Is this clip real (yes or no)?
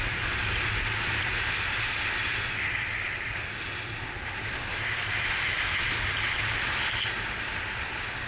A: yes